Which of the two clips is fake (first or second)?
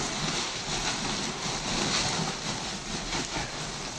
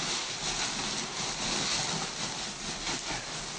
first